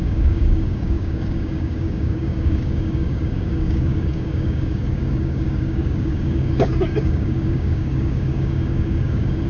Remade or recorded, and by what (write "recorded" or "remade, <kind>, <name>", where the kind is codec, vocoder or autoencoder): remade, codec, DAC